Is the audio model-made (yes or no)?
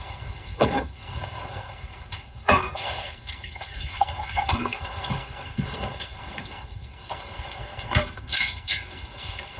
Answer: yes